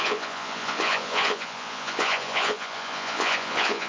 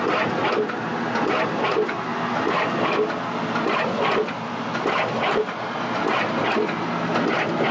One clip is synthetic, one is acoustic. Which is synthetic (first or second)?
first